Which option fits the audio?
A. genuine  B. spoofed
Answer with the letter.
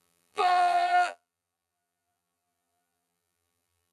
B